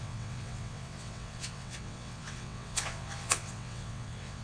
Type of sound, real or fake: fake